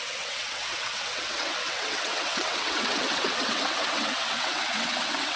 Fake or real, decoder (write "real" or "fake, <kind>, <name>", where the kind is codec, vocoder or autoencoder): fake, vocoder, WaveNeXt